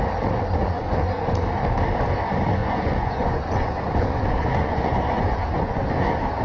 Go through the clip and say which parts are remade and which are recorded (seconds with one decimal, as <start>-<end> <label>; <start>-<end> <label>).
0.0-0.6 recorded; 0.6-1.3 remade; 1.3-2.6 recorded; 2.6-5.9 remade; 5.9-6.4 recorded